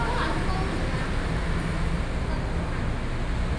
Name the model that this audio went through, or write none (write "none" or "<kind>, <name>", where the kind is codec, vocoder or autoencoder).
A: none